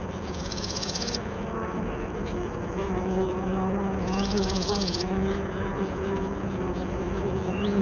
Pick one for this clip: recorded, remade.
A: remade